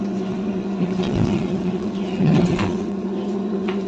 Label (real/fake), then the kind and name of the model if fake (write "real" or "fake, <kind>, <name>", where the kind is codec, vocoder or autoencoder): fake, vocoder, WaveNeXt